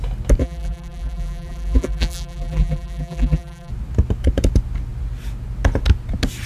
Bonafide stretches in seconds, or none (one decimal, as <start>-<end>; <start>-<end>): 0.0-0.4; 3.7-6.5

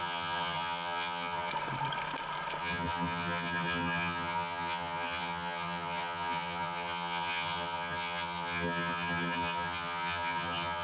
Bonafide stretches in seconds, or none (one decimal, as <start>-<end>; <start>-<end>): 1.5-2.6

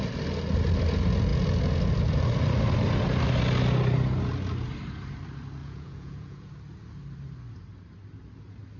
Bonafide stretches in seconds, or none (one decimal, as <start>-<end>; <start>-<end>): 0.0-5.6; 6.5-8.8

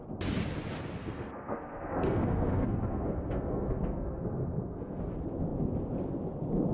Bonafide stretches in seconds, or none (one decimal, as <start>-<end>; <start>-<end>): 0.0-1.0; 5.0-6.7

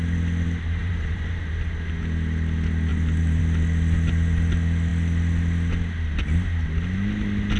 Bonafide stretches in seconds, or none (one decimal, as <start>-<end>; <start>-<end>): 0.0-0.8; 1.5-2.9; 3.4-7.6

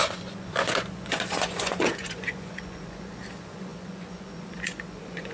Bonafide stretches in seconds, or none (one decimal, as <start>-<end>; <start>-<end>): none